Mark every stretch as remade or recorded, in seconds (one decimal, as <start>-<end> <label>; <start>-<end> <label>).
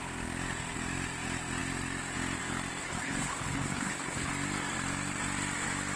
0.0-2.8 recorded; 2.8-4.3 remade; 4.3-6.0 recorded